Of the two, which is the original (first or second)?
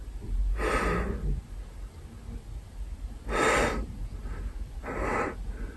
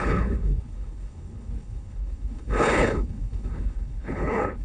first